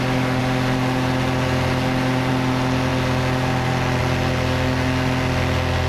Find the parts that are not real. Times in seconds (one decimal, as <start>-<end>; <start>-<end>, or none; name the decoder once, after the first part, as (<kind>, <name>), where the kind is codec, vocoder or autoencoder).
none